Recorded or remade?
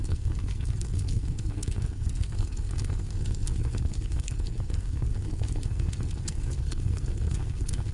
remade